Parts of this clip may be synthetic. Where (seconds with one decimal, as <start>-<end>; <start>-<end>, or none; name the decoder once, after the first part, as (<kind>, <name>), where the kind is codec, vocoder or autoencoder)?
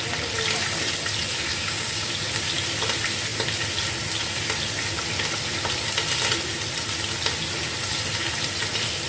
1.5-2.1 (codec, DAC)